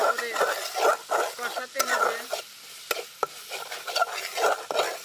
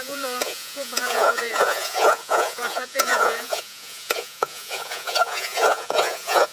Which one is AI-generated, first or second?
second